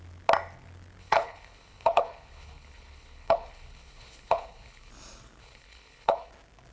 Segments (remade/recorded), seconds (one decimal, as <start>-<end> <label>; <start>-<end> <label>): 0.0-1.0 recorded; 1.0-4.9 remade; 4.9-5.4 recorded; 5.4-6.3 remade; 6.3-6.7 recorded

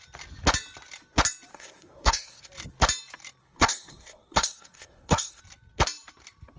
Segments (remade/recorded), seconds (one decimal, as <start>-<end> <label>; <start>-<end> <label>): 0.0-1.5 recorded; 1.5-2.5 remade; 2.5-3.4 recorded; 3.4-5.4 remade; 5.4-6.6 recorded